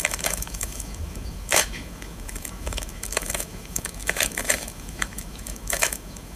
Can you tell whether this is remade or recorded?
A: remade